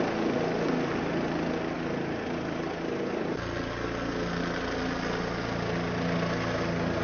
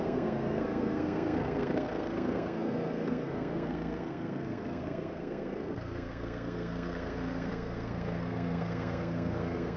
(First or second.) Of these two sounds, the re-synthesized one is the second